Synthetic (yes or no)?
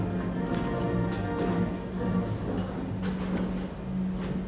no